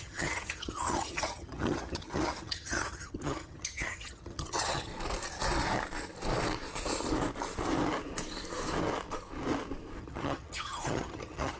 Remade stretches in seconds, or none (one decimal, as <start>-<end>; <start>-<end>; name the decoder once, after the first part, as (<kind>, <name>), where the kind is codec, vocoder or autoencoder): 0.0-4.9 (vocoder, HiFi-GAN); 10.0-11.6